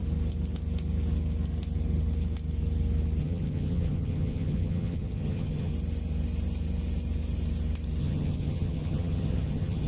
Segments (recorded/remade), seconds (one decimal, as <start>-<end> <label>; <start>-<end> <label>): 0.0-3.2 recorded; 3.2-5.7 remade; 5.7-8.0 recorded; 8.0-9.9 remade